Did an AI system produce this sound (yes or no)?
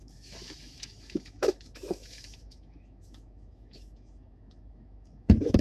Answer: yes